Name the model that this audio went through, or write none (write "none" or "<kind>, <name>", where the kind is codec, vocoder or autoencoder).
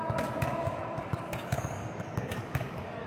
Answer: codec, DAC